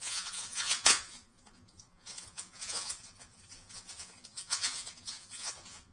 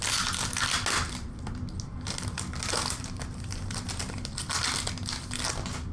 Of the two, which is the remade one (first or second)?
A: first